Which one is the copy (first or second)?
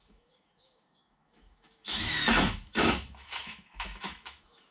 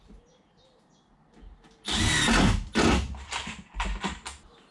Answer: first